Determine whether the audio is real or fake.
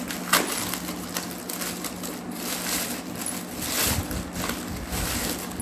real